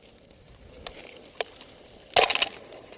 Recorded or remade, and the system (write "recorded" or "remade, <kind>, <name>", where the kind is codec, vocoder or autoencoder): recorded